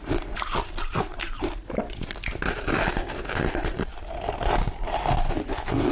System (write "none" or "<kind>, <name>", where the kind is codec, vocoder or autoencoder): none